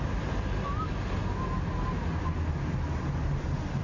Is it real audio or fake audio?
real